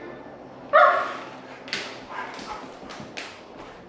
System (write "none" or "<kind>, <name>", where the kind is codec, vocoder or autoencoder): none